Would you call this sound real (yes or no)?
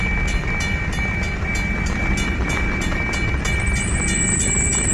yes